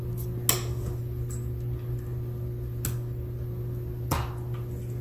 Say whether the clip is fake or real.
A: real